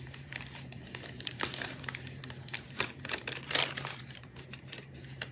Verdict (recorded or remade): remade